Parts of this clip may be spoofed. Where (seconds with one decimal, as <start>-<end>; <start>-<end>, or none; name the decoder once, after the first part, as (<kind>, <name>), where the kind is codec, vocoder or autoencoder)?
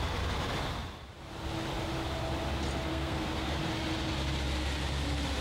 2.9-3.6 (codec, SNAC)